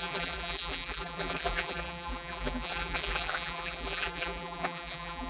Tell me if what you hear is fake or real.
fake